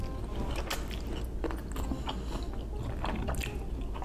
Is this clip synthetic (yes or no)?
no